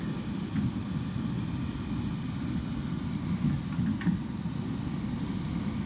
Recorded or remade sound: recorded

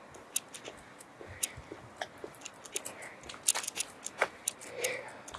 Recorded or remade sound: recorded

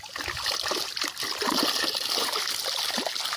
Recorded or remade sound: recorded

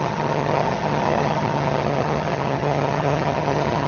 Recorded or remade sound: remade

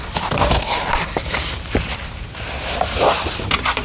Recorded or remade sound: remade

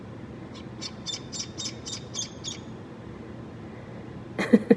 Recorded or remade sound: recorded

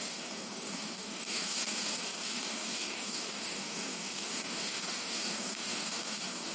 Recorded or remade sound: remade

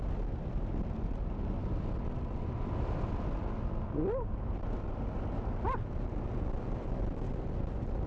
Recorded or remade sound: recorded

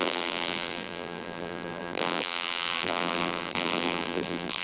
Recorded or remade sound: remade